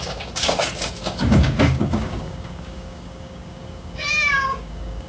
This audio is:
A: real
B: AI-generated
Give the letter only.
B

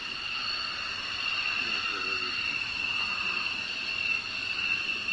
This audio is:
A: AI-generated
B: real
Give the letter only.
B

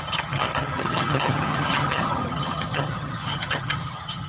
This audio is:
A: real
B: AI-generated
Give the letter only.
B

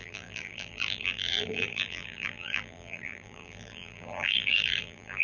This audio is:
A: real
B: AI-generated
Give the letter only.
B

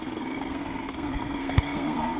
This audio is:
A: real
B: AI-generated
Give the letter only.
B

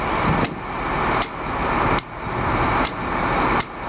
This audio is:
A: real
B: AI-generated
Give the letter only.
A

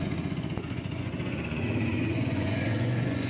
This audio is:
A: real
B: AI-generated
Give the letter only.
B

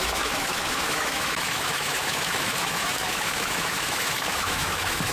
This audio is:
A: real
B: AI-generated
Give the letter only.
B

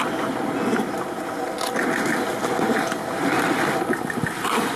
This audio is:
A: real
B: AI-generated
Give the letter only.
A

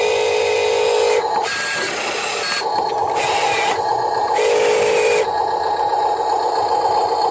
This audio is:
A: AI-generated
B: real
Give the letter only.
B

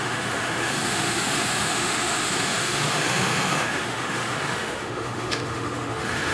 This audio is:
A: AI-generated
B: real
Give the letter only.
A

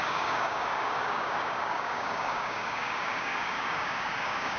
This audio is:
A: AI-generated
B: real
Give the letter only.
A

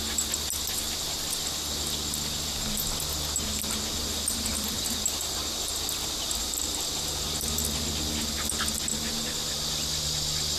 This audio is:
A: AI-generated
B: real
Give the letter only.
B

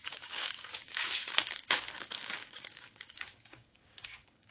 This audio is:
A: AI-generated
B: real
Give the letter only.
A